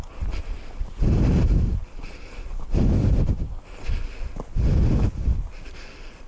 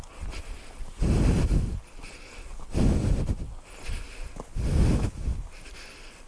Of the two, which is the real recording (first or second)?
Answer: second